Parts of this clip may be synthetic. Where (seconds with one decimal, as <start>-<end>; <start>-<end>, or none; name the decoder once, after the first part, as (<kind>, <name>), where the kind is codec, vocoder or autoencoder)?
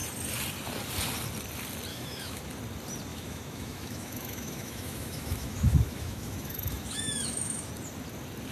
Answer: 1.9-2.4 (autoencoder, DAC-VAE); 3.1-7.7